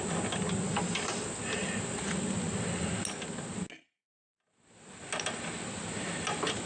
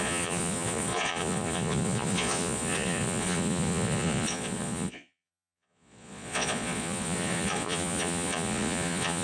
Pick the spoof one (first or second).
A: second